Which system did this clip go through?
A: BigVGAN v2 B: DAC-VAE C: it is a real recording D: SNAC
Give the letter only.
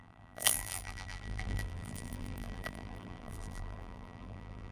A